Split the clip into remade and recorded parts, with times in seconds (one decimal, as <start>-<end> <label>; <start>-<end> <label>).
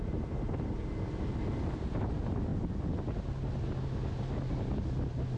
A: 0.0-5.4 recorded